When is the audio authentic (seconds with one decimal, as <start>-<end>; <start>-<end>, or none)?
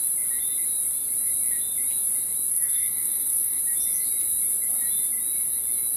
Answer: 0.0-2.5; 3.6-6.0